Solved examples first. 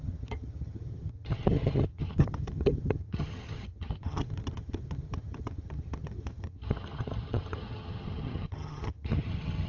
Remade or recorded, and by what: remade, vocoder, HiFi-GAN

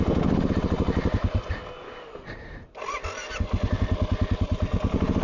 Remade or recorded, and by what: recorded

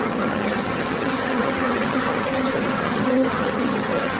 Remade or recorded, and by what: remade, vocoder, HiFi-GAN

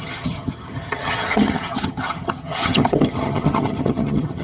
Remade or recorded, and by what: remade, vocoder, HiFi-GAN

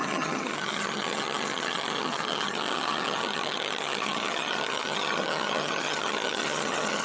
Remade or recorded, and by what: remade, vocoder, HiFi-GAN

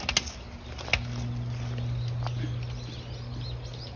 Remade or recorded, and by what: recorded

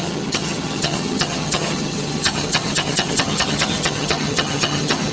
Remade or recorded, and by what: remade, vocoder, HiFi-GAN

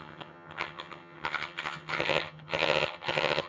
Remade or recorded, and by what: remade, vocoder, HiFi-GAN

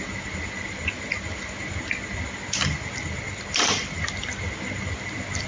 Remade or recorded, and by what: recorded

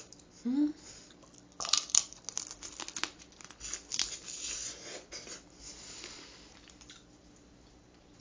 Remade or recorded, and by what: recorded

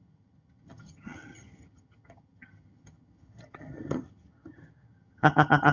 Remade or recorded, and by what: remade, vocoder, HiFi-GAN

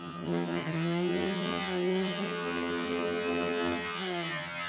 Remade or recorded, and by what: remade, vocoder, HiFi-GAN